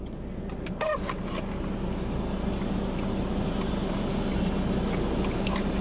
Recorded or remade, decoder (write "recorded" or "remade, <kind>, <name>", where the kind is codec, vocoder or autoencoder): recorded